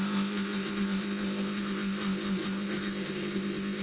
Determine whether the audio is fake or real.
fake